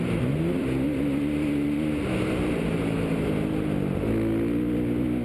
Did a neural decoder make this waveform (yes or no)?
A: no